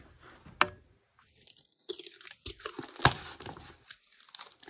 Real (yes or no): yes